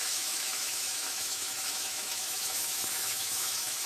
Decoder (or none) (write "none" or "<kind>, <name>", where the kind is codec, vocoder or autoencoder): autoencoder, DAC-VAE